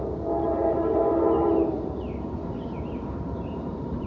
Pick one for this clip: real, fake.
fake